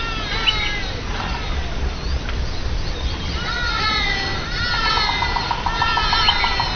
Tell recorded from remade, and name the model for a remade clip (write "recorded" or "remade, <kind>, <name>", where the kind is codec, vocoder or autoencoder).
recorded